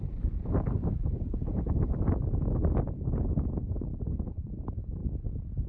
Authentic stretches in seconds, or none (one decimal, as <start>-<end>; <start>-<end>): 0.0-5.7